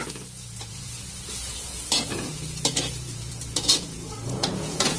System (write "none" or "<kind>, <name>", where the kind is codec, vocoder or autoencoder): vocoder, Vocos